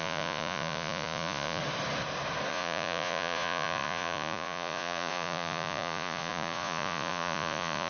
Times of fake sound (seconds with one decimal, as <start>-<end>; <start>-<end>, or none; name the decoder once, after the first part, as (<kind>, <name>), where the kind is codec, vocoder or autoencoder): 0.0-1.6 (vocoder, Vocos); 2.5-7.9